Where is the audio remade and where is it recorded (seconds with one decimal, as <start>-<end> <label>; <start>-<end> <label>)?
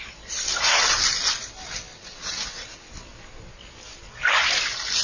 0.0-1.9 recorded; 1.9-2.9 remade; 2.9-5.0 recorded